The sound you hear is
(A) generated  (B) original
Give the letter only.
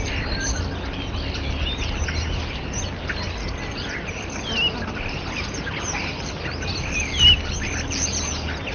B